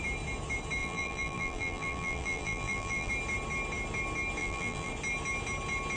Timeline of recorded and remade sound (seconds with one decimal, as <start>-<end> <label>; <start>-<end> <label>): 0.0-0.8 recorded; 0.8-3.1 remade; 3.1-4.4 recorded; 4.4-4.9 remade; 4.9-6.0 recorded